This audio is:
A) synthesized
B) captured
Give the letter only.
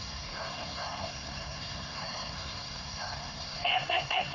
A